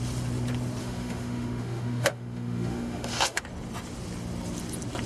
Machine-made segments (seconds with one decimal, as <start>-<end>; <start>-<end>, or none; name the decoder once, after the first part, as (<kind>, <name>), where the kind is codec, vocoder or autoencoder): 0.8-3.4 (autoencoder, DAC-VAE)